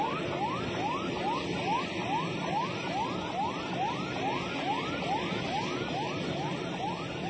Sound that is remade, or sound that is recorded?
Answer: recorded